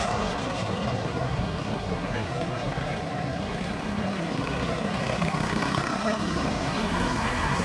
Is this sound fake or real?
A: fake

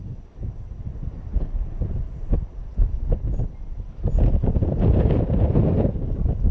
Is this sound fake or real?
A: fake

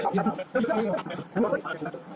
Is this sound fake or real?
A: real